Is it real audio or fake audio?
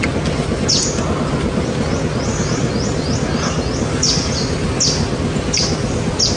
real